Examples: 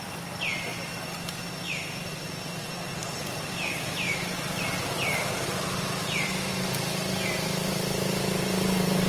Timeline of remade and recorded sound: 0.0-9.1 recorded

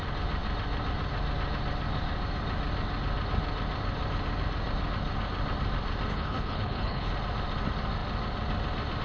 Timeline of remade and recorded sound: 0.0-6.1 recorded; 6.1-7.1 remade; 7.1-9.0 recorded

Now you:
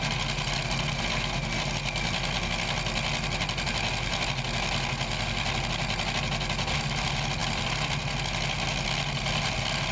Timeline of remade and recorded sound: 0.0-9.9 recorded